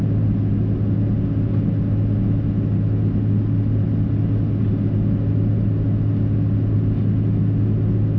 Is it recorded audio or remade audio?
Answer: recorded